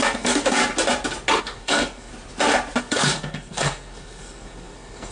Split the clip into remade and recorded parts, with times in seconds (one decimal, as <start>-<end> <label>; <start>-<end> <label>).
0.0-0.6 remade; 0.6-1.4 recorded; 1.4-2.1 remade; 2.1-2.8 recorded; 2.8-5.1 remade